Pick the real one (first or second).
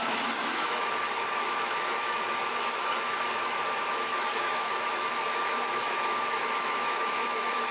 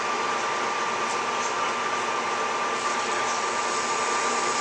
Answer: second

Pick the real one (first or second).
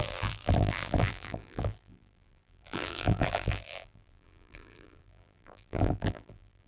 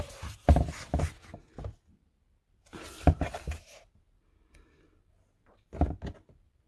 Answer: second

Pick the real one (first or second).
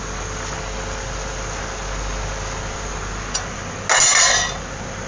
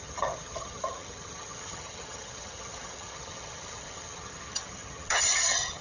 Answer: first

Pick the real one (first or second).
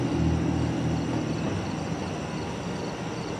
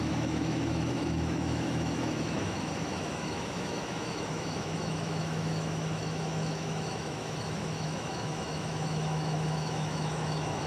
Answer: first